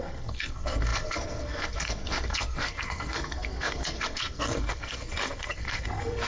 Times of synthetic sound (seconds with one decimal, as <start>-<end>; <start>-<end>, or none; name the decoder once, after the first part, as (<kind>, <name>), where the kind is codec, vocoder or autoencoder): 0.0-6.3 (codec, SNAC)